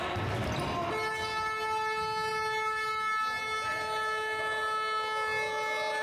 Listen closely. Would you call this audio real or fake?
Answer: real